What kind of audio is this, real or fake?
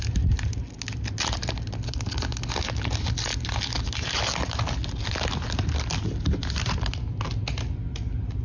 real